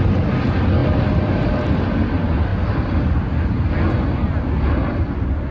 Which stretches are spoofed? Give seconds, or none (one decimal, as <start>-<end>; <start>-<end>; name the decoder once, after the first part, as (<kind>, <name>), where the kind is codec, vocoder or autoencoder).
none